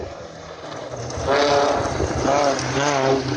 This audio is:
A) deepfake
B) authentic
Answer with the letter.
B